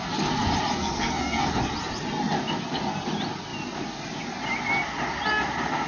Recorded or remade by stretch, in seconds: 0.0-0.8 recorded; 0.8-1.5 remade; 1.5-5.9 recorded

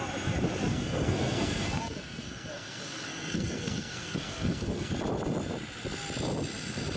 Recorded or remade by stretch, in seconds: 0.0-0.7 recorded; 0.7-4.9 remade; 4.9-7.0 recorded

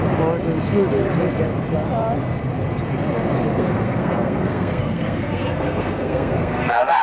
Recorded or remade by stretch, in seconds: 0.0-3.5 recorded; 3.5-7.0 remade

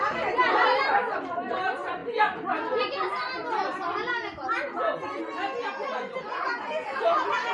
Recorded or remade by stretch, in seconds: 0.0-7.5 recorded